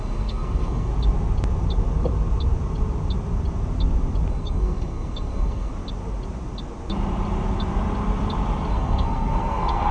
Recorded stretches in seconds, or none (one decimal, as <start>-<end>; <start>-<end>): 0.9-4.3; 5.7-8.7

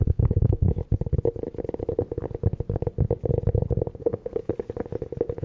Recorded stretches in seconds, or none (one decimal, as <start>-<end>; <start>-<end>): 0.8-4.0; 4.5-5.4